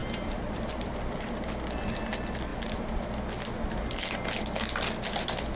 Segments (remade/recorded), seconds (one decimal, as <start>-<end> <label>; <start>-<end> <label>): 0.0-1.5 remade; 1.5-2.5 recorded; 2.5-3.1 remade; 3.1-5.6 recorded